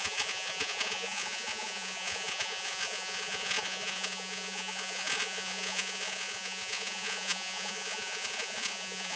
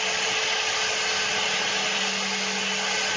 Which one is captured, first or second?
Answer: second